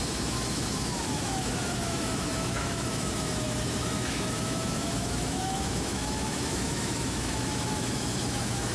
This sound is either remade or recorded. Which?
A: remade